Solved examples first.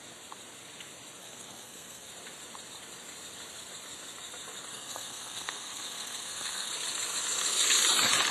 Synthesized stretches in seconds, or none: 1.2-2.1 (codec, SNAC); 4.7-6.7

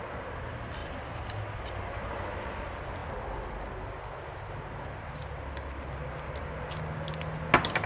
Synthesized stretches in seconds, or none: none

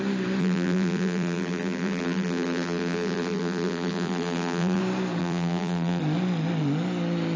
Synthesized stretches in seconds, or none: 0.4-4.8 (vocoder, BigVGAN v2); 5.2-6.0